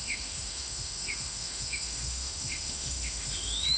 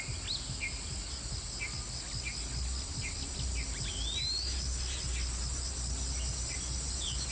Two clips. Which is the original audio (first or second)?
second